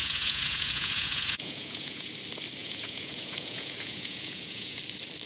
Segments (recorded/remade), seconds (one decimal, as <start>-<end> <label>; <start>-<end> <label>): 0.0-2.1 remade; 2.1-2.6 recorded; 2.6-4.8 remade; 4.8-5.3 recorded